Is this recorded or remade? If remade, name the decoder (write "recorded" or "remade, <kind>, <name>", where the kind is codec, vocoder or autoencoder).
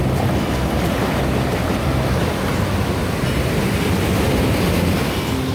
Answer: recorded